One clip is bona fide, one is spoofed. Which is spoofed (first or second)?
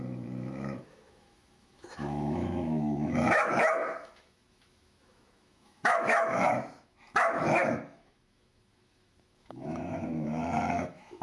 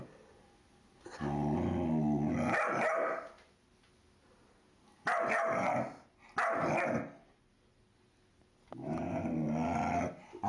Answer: first